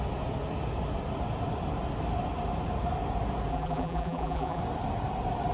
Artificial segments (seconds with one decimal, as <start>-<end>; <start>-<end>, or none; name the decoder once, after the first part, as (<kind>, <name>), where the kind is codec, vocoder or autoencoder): 3.5-4.6 (vocoder, BigVGAN v2)